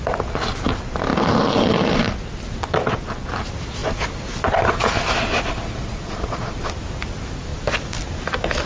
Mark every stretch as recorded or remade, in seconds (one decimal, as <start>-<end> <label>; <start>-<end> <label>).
0.0-5.5 recorded; 5.5-6.6 remade; 6.6-8.7 recorded